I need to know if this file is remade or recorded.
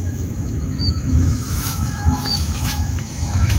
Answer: remade